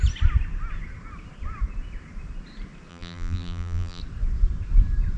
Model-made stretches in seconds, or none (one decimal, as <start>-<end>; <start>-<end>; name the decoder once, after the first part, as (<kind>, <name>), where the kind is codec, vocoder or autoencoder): 2.9-4.0 (vocoder, BigVGAN v2)